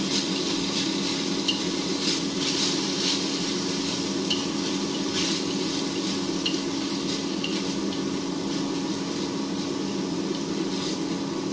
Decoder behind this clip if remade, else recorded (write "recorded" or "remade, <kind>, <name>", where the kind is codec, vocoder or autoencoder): recorded